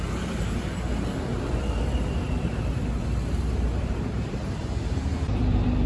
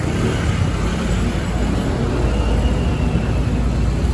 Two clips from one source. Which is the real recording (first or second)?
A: second